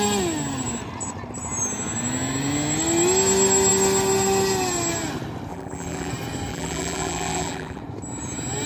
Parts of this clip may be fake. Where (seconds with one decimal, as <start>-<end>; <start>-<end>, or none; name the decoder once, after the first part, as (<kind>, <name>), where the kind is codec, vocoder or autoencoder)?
5.5-6.1 (vocoder, BigVGAN v2); 6.5-7.8